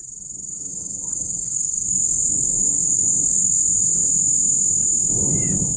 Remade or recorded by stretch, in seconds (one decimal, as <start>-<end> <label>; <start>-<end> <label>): 0.0-0.7 recorded; 0.7-3.5 remade; 3.5-5.8 recorded